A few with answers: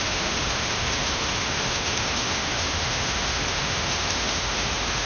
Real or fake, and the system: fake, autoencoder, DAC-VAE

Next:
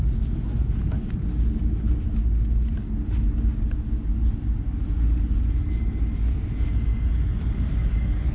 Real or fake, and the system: real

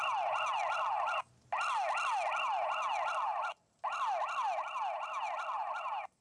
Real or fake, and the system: real